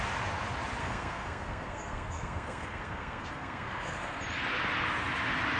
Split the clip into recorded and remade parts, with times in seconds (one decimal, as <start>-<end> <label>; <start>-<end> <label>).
0.0-0.8 recorded; 0.8-4.2 remade; 4.2-5.6 recorded